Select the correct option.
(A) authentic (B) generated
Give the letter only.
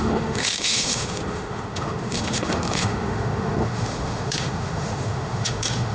B